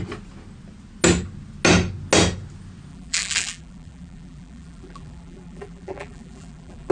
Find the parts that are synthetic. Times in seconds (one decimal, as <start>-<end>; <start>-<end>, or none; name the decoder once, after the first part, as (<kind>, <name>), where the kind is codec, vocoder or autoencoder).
2.9-6.9 (vocoder, BigVGAN v2)